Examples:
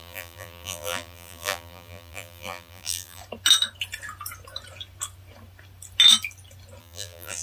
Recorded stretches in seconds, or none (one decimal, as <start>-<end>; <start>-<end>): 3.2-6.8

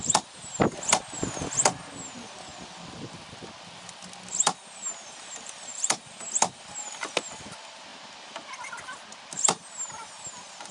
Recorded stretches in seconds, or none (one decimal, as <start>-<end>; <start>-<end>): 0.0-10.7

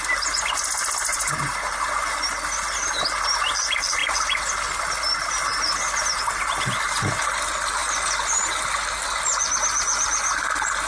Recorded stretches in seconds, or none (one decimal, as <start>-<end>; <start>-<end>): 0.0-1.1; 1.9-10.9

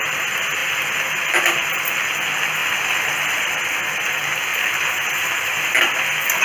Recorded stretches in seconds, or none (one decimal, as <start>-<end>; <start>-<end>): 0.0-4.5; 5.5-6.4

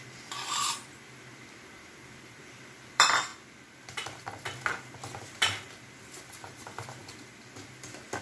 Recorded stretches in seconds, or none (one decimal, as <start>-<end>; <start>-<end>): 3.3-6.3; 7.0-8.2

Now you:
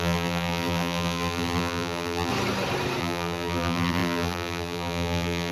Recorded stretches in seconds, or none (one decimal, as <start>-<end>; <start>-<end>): 2.3-3.0